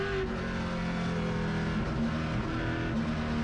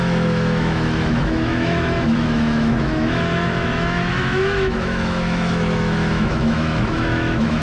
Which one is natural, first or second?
first